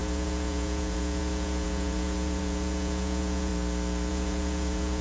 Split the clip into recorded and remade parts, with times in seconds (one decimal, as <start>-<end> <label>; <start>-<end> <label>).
0.0-3.5 remade; 3.5-4.1 recorded; 4.1-5.0 remade